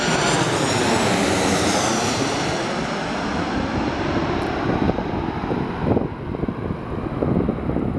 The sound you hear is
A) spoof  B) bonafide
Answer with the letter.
B